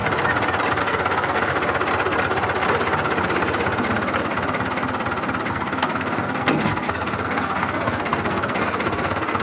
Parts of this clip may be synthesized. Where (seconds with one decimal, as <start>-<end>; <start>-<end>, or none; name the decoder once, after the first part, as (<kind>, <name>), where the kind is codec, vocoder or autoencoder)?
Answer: 0.8-1.5 (codec, SNAC); 5.5-9.4